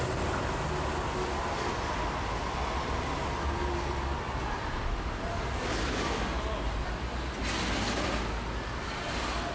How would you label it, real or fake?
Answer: real